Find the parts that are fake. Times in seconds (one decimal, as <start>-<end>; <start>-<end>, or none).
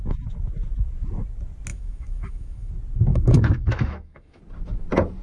1.7-2.7; 3.1-4.4